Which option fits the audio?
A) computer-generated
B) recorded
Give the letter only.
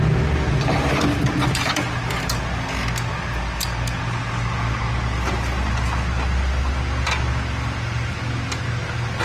B